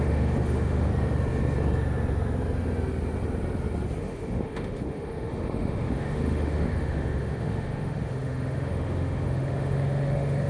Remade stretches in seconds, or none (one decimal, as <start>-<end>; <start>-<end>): 0.0-0.9; 4.0-10.5